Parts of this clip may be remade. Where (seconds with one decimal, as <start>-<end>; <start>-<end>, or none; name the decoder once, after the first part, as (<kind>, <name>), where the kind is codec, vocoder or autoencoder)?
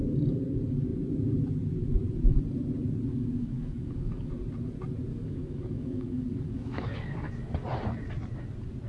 3.1-4.3 (codec, DAC); 5.1-7.3